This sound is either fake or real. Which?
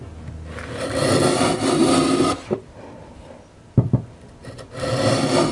real